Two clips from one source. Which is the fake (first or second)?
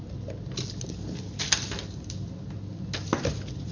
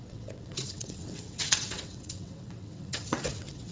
second